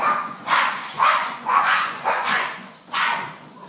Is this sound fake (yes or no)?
yes